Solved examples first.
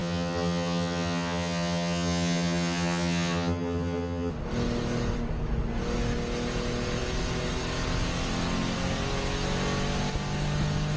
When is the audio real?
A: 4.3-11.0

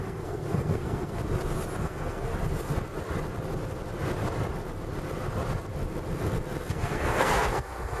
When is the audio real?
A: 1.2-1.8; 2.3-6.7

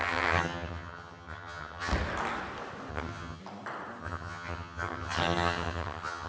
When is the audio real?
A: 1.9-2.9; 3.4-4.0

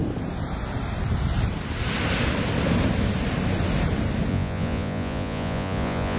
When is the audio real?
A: 0.0-4.3